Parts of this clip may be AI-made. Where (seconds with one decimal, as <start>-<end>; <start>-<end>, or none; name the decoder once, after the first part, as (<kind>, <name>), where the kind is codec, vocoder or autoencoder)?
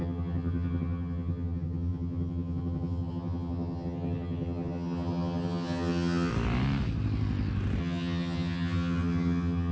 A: 0.0-6.3 (vocoder, HiFi-GAN); 7.8-9.7